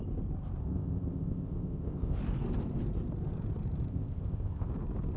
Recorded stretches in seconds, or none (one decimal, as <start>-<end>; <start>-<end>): 0.0-0.6; 2.2-3.9; 4.7-5.2